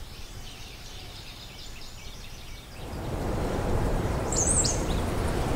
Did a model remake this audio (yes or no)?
yes